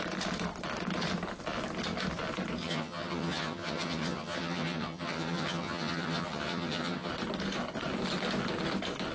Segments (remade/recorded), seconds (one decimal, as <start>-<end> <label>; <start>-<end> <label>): 0.0-2.6 recorded; 2.6-7.1 remade; 7.1-9.1 recorded